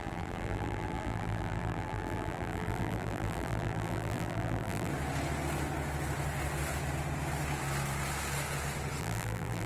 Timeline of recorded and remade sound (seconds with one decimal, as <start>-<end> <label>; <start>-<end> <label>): 0.0-4.9 remade; 4.9-9.0 recorded; 9.0-9.7 remade